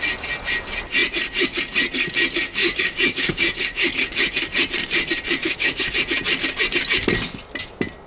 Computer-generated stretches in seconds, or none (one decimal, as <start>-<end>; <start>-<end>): 2.6-4.0; 5.4-5.9